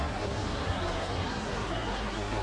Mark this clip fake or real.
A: fake